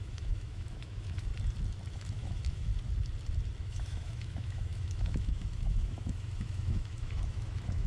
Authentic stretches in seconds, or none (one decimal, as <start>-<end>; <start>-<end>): 1.3-1.9; 2.7-3.6

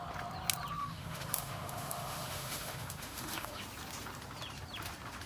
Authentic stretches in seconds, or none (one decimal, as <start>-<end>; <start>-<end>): 0.0-0.8; 3.6-5.3

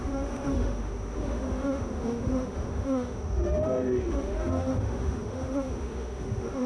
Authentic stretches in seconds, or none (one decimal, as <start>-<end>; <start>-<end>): none